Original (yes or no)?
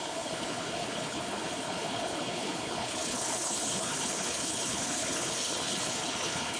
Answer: no